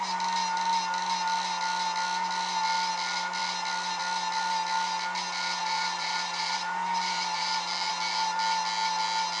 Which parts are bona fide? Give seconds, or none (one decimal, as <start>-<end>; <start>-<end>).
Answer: 0.0-5.6; 7.9-9.4